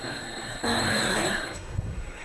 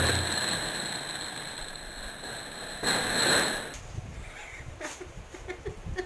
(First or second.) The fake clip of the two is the first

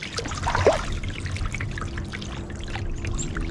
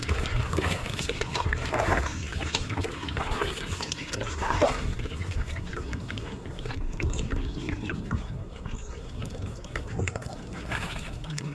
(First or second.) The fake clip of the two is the second